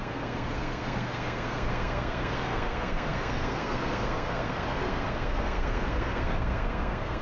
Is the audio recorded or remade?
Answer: remade